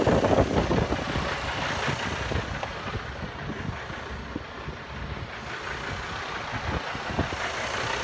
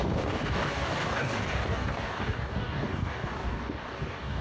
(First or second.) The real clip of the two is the first